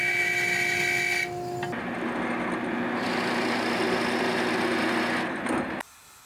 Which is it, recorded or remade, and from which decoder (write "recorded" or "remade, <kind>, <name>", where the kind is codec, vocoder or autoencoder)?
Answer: recorded